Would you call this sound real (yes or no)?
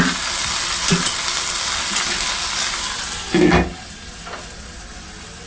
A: yes